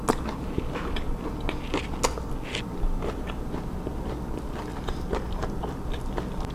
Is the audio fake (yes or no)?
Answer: no